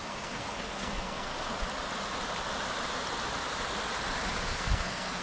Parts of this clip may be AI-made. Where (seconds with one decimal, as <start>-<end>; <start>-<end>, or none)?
0.0-1.3; 4.4-5.2